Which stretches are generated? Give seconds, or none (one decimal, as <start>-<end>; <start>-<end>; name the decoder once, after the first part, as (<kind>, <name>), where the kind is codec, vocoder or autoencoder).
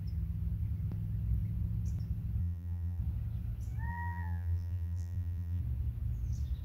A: 2.4-3.0 (vocoder, BigVGAN v2); 3.9-5.6